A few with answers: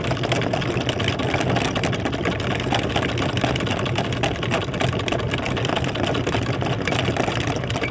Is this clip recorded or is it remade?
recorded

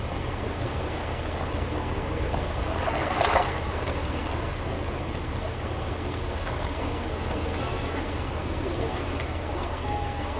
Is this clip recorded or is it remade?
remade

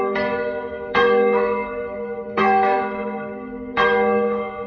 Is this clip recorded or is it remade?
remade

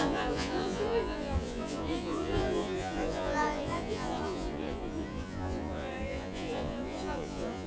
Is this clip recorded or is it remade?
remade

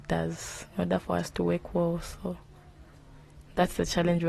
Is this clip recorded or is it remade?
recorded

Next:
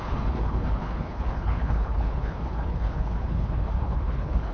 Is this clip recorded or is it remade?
remade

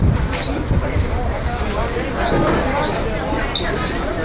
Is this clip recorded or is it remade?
recorded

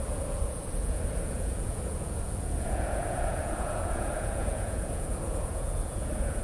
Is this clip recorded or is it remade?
remade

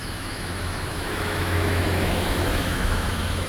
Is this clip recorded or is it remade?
remade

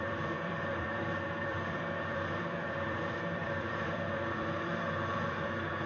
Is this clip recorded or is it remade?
remade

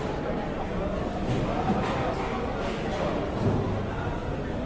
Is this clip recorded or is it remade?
recorded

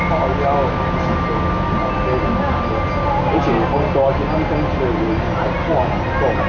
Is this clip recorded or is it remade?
recorded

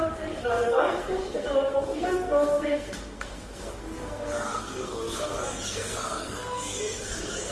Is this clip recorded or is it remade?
remade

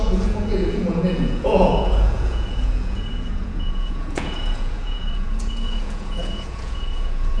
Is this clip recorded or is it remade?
remade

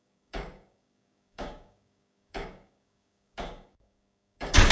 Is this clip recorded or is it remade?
remade